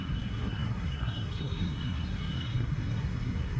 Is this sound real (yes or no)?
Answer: no